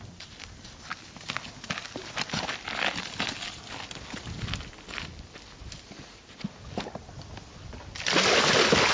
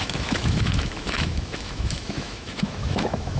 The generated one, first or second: second